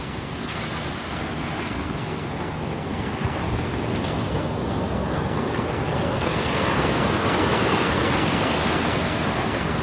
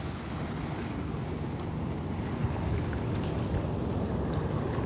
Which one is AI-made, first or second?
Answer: first